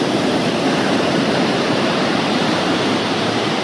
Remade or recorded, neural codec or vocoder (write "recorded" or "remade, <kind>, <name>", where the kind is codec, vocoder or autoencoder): remade, vocoder, BigVGAN v2